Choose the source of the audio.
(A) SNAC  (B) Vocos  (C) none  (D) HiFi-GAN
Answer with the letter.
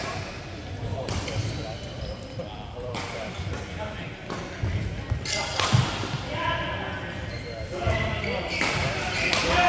C